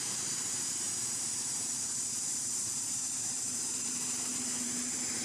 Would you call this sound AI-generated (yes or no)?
yes